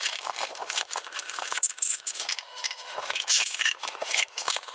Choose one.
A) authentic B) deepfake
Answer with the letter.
B